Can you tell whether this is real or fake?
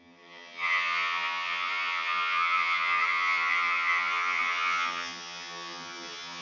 fake